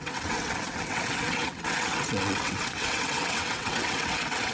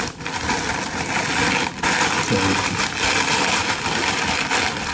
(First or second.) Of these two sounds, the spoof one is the first